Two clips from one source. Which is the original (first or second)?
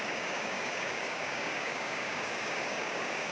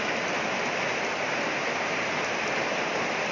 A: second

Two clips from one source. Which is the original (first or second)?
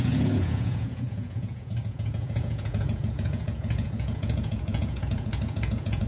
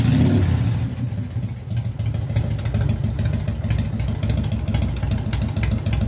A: second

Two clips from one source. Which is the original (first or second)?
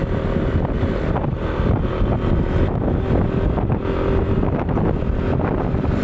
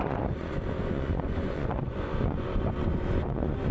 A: first